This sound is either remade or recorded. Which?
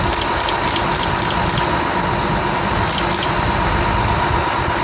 recorded